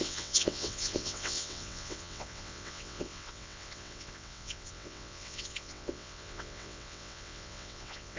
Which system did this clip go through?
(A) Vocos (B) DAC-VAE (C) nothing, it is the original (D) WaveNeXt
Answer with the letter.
D